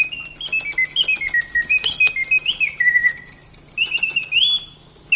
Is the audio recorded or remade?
recorded